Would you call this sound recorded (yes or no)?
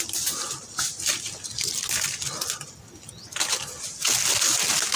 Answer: yes